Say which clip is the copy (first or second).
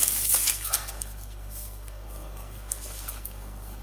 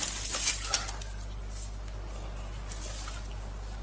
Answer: first